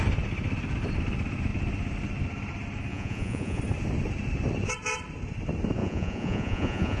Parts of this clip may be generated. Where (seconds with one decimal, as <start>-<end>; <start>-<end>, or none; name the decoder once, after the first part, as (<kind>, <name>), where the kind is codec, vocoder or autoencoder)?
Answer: 2.9-3.6 (vocoder, Vocos); 5.8-7.0